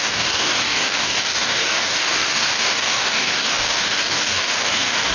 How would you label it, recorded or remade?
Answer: remade